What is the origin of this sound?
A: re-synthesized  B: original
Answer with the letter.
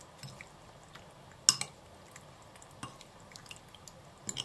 B